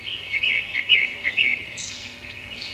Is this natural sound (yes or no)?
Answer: no